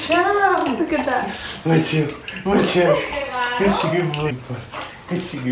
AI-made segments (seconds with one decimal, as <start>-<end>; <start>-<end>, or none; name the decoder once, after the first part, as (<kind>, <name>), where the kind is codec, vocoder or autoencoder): none